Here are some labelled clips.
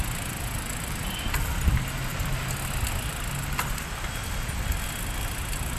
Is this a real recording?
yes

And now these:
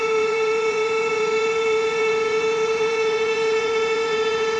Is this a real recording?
no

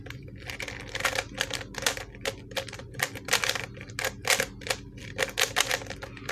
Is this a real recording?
yes